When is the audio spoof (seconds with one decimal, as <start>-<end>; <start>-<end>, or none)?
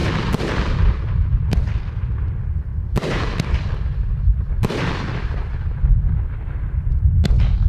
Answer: 0.0-1.7; 2.7-7.1